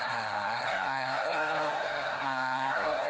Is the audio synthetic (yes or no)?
yes